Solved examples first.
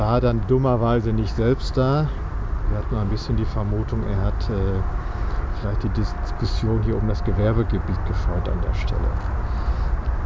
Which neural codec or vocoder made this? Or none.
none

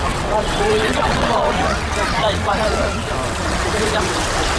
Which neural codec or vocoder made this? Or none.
vocoder, WaveNeXt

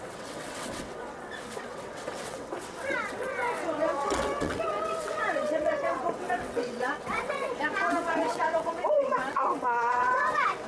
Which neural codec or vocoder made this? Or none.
vocoder, WaveNeXt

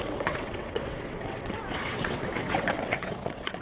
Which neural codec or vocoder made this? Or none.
vocoder, WaveNeXt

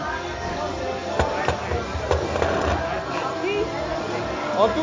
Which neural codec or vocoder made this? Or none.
none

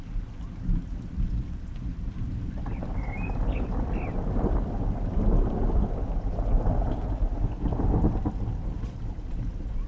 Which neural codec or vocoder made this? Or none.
none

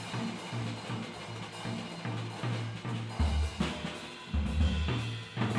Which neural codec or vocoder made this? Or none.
none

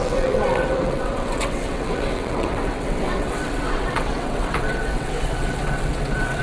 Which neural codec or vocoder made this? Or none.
vocoder, WaveNeXt